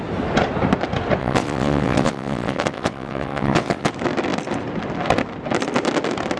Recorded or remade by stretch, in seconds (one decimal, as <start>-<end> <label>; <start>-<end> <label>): 0.0-1.2 recorded; 1.2-3.9 remade; 3.9-6.4 recorded